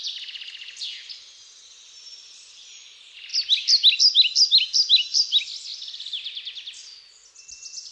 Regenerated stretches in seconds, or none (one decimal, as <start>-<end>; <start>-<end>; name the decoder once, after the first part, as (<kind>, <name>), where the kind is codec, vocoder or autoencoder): none